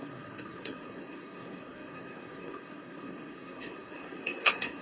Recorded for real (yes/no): no